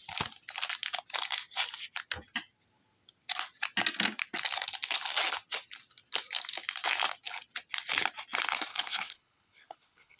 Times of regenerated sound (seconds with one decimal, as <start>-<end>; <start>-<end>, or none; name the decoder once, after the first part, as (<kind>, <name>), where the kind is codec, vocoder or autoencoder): 8.7-10.2 (codec, HILCodec)